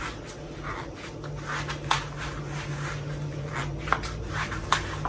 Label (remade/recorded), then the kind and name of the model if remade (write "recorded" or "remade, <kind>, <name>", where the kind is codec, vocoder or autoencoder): recorded